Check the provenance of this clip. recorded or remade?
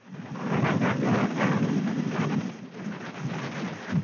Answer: recorded